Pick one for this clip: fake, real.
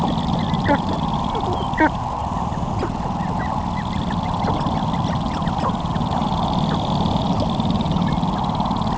real